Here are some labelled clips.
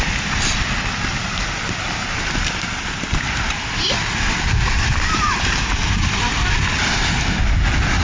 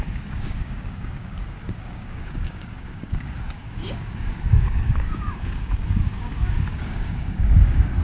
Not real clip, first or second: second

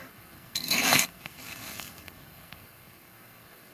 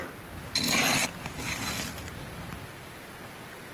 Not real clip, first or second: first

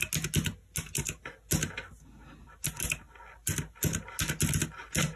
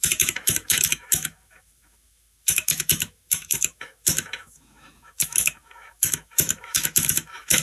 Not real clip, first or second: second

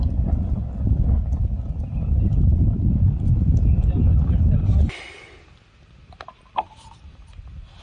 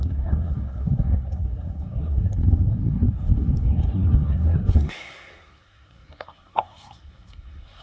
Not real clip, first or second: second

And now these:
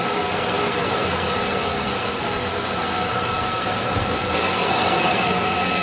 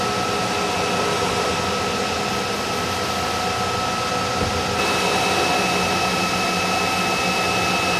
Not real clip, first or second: first